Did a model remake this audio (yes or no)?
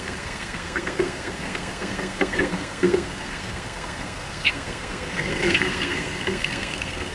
yes